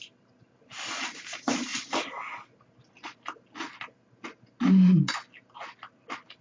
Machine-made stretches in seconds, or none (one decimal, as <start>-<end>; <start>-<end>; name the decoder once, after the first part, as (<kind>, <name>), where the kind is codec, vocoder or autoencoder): none